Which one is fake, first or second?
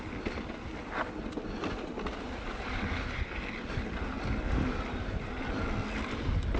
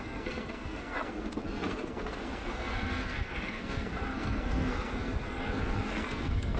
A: second